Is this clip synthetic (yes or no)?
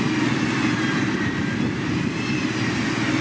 no